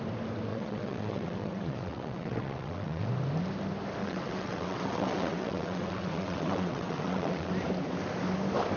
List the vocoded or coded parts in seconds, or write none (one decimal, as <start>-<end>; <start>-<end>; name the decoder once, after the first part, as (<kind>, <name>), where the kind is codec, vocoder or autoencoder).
0.5-3.1 (vocoder, WaveNeXt); 4.0-7.5